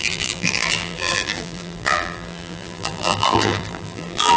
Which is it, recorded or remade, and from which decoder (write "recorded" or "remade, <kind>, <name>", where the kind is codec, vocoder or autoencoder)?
remade, vocoder, BigVGAN v2